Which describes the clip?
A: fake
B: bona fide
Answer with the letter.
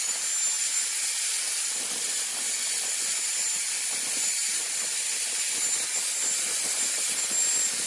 B